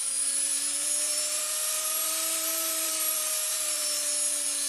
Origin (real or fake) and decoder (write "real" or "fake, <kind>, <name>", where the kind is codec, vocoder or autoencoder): fake, vocoder, BigVGAN v2